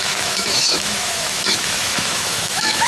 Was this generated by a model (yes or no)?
yes